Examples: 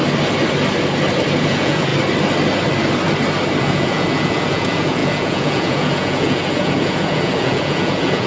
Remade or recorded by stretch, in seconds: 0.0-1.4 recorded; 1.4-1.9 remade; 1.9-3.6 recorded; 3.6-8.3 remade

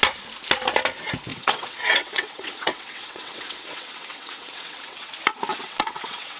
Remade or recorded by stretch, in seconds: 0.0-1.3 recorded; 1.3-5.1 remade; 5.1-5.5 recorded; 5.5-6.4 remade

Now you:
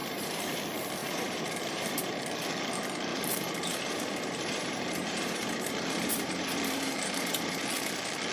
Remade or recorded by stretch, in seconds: 0.0-0.6 remade; 0.6-1.0 recorded; 1.0-2.0 remade; 2.0-3.1 recorded; 3.1-7.6 remade; 7.6-8.3 recorded

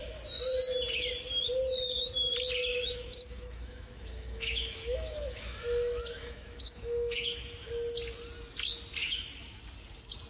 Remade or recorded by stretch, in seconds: 0.0-2.7 recorded; 2.7-7.7 remade; 7.7-9.0 recorded; 9.0-9.6 remade; 9.6-10.3 recorded

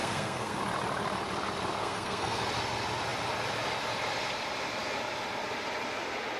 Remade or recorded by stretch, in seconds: 0.0-0.6 remade; 0.6-1.8 recorded; 1.8-2.4 remade; 2.4-6.4 recorded

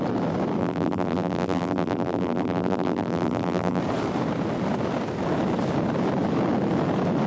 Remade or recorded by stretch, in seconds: 0.0-0.6 recorded; 0.6-3.8 remade; 3.8-7.3 recorded

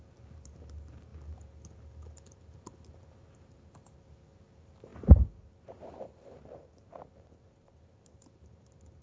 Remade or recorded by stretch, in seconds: 0.0-1.1 remade; 1.1-2.3 recorded; 2.3-9.0 remade

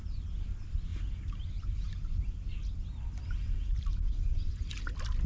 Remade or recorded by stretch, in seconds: 0.0-5.3 recorded